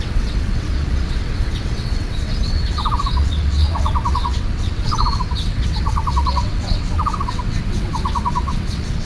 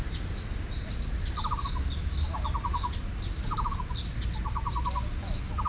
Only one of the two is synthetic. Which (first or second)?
first